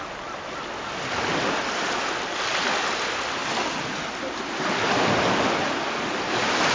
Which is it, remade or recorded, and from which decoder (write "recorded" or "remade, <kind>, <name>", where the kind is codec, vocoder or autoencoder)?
recorded